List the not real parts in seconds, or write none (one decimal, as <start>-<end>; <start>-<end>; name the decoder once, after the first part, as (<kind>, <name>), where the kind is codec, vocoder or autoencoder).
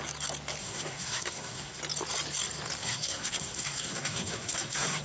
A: 0.6-1.8 (codec, SNAC); 2.8-5.0